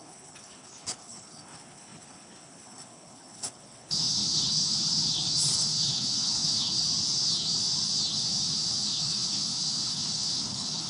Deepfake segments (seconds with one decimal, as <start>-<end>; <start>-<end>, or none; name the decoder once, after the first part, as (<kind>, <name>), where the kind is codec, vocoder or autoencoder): 0.0-6.8 (codec, HILCodec); 8.1-10.9